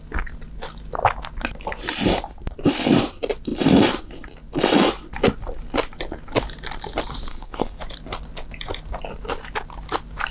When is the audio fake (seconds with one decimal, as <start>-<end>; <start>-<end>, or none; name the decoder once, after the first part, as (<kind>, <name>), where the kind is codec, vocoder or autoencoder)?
7.3-7.8 (codec, SNAC)